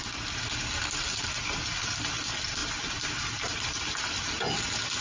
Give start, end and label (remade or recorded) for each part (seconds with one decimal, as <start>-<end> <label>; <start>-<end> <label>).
0.0-5.0 recorded